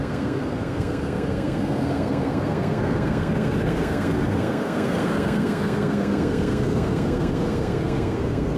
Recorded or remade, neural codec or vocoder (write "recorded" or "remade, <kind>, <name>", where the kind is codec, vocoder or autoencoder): remade, codec, SNAC